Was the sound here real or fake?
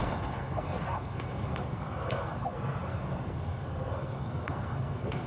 fake